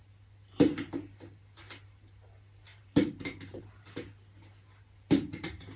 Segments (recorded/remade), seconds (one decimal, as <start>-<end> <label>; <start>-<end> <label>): 0.0-2.7 recorded; 2.7-3.6 remade; 3.6-5.8 recorded